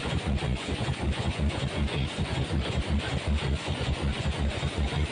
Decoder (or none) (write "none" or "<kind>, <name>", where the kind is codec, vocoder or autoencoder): vocoder, Vocos